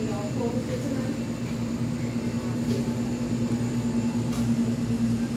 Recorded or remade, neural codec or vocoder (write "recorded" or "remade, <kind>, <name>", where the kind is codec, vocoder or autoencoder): recorded